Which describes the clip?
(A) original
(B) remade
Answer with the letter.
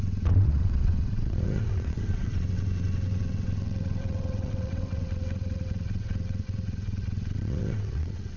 B